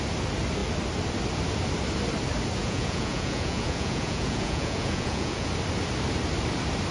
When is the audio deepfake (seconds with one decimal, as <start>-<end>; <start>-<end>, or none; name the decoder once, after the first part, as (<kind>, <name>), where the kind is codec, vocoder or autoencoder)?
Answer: 2.6-5.5 (vocoder, Vocos)